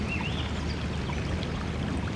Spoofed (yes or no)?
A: no